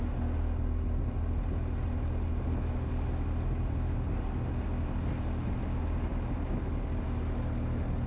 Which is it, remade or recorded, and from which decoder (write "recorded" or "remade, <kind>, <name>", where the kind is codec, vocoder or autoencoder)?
recorded